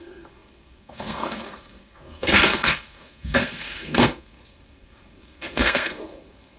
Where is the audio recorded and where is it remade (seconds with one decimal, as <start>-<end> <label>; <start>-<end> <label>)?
0.0-6.6 remade